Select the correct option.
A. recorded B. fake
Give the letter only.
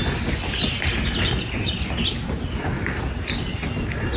A